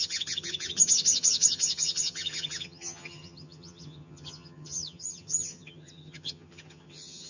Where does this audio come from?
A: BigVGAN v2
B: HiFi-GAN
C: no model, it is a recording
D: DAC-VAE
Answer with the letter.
B